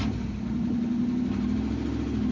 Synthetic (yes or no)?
no